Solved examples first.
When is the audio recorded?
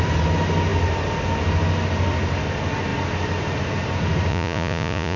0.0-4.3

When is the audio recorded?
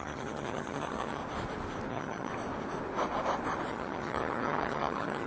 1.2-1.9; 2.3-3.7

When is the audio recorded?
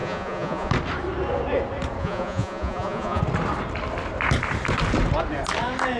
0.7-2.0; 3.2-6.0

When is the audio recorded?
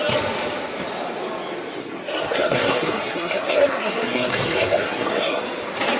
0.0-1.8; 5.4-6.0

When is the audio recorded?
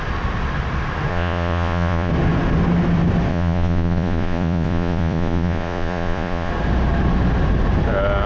0.0-1.1; 2.1-3.3; 6.5-8.3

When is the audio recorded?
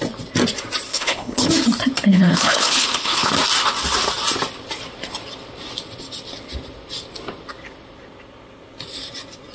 0.0-0.9; 1.5-2.1; 3.3-9.5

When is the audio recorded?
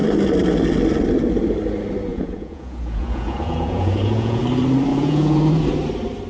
0.0-2.1; 4.4-4.9; 5.5-6.3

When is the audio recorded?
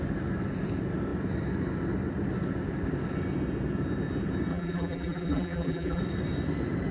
0.0-4.5; 6.0-6.9